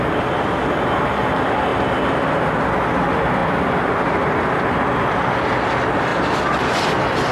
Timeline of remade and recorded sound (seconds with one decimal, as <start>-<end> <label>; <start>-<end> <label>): 0.0-7.3 recorded

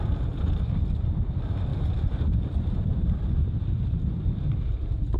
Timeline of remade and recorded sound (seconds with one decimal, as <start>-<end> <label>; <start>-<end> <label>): 0.0-1.7 recorded; 1.7-4.8 remade; 4.8-5.2 recorded

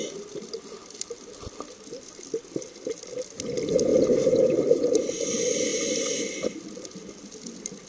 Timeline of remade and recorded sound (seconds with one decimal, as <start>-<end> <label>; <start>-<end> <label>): 0.0-3.9 recorded; 3.9-5.1 remade; 5.1-7.9 recorded

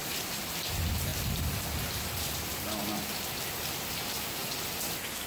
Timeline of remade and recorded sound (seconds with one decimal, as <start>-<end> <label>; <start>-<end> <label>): 0.0-0.6 remade; 0.6-5.3 recorded

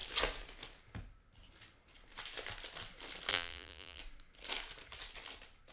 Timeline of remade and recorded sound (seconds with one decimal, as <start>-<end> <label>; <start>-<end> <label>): 0.0-3.3 recorded; 3.3-4.0 remade; 4.0-5.7 recorded

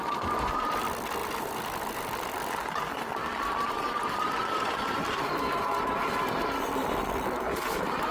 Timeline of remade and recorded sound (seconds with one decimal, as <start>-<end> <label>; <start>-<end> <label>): 0.0-8.1 remade

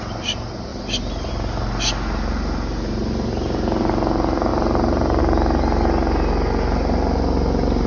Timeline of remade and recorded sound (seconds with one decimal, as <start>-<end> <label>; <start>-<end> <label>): 0.0-0.7 recorded; 0.7-1.3 remade; 1.3-4.5 recorded; 4.5-5.2 remade; 5.2-7.9 recorded